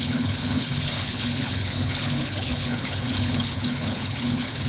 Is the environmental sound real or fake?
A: fake